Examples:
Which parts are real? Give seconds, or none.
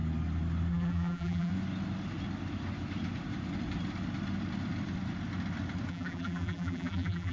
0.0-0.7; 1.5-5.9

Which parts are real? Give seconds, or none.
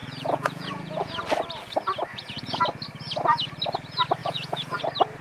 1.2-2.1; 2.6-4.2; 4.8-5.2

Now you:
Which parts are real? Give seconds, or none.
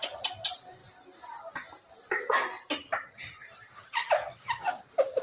0.8-1.4